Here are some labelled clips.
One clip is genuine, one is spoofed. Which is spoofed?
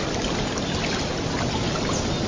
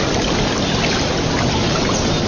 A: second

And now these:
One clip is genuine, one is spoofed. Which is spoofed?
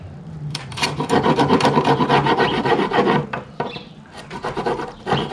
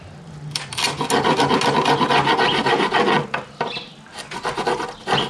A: first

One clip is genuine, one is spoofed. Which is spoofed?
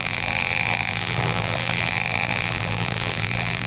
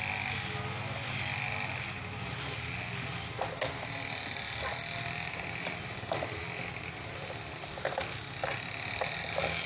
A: first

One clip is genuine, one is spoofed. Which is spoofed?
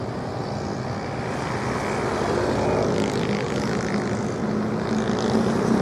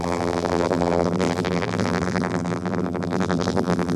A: second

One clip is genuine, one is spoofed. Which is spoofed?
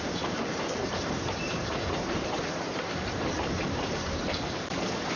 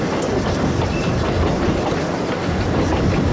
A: first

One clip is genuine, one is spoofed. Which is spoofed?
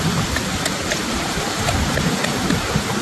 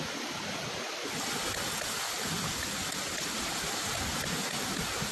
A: first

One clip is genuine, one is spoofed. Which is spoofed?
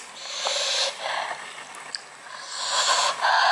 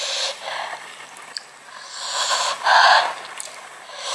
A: second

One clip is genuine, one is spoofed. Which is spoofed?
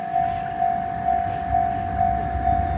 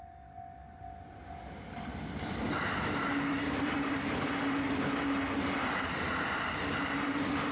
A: second